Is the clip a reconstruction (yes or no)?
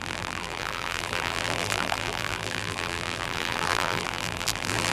yes